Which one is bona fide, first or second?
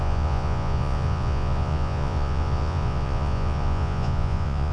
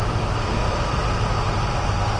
second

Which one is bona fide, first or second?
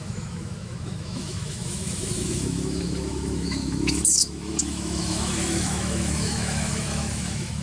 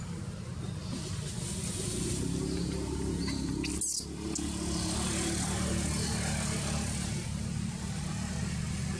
second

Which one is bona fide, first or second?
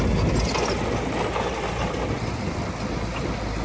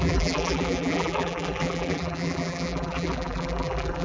first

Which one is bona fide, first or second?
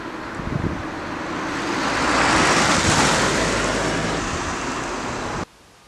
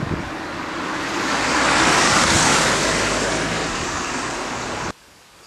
first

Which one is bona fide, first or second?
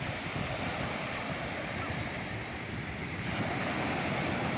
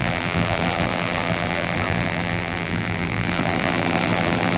first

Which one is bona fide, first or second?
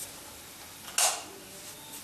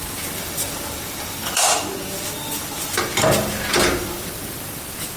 first